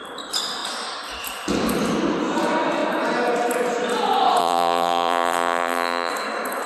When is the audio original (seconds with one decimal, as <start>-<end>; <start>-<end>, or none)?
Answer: 0.0-4.4; 6.1-6.7